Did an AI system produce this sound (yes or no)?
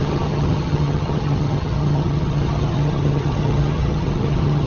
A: yes